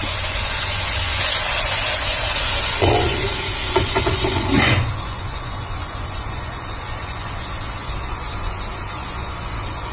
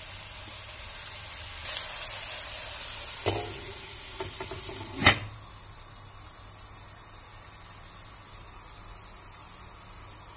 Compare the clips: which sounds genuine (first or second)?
second